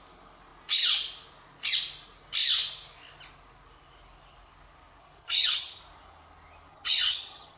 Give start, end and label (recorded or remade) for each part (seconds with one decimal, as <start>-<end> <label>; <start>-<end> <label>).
0.0-5.2 recorded; 5.2-5.8 remade; 5.8-6.7 recorded; 6.7-7.6 remade

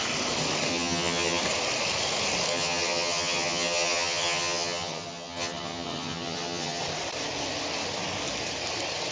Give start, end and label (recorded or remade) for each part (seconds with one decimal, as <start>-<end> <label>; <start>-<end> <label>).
0.0-0.7 recorded; 0.7-1.4 remade; 1.4-2.5 recorded; 2.5-6.8 remade; 6.8-9.1 recorded

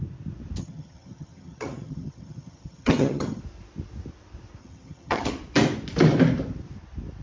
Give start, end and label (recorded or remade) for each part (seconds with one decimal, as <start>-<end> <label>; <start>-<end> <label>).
0.0-0.6 recorded; 0.6-3.4 remade; 3.4-4.6 recorded; 4.6-5.3 remade; 5.3-7.2 recorded

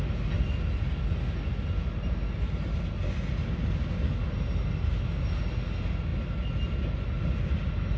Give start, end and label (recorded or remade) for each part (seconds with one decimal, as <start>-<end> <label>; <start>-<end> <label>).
0.0-8.0 recorded